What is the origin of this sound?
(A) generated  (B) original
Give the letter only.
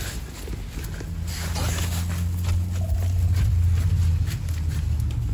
B